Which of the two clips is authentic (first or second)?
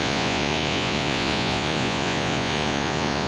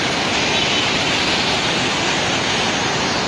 second